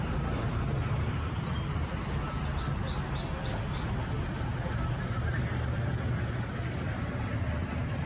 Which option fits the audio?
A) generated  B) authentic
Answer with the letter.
B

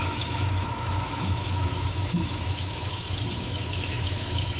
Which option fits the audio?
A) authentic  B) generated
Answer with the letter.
B